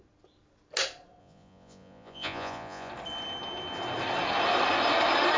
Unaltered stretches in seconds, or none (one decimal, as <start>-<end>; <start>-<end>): 0.0-1.2; 2.9-5.4